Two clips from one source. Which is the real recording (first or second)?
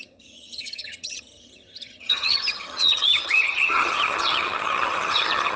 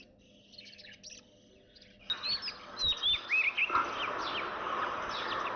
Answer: second